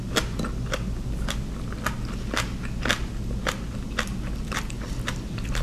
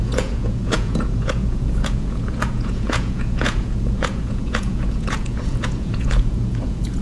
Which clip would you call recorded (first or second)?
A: first